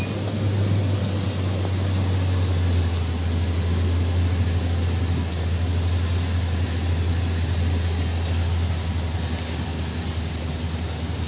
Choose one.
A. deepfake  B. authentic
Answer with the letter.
B